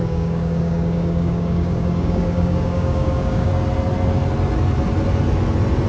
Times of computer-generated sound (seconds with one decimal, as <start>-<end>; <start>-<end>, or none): 0.0-3.5